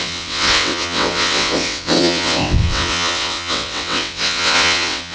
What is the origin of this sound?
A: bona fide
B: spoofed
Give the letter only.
B